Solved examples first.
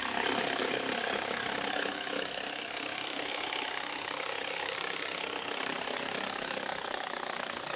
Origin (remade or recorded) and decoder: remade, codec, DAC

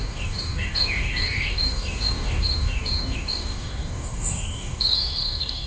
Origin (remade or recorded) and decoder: remade, codec, DAC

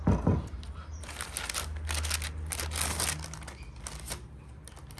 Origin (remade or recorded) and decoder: recorded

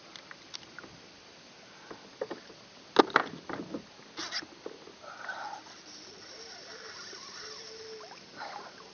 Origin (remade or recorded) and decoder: recorded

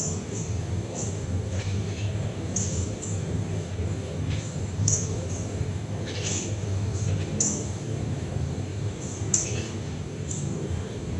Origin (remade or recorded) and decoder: remade, codec, DAC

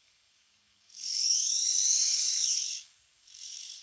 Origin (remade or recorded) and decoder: remade, codec, DAC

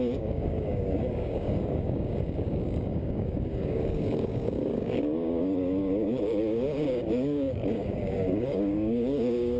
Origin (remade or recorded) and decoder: remade, codec, DAC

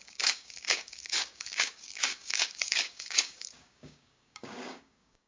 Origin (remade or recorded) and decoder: remade, codec, DAC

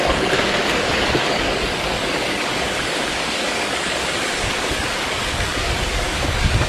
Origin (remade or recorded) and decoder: remade, codec, DAC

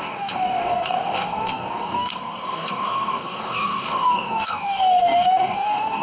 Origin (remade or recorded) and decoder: remade, codec, DAC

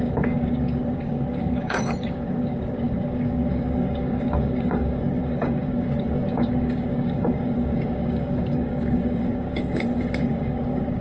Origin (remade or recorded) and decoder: remade, codec, DAC